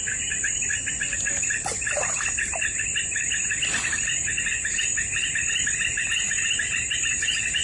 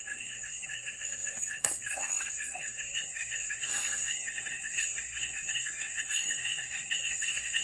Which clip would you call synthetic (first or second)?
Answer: second